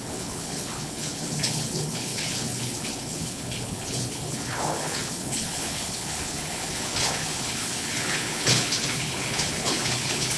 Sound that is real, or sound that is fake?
fake